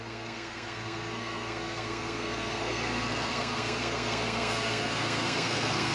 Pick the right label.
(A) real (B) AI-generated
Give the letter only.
B